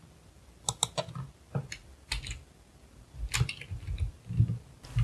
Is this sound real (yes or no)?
yes